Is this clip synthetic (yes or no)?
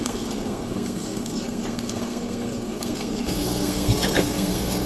yes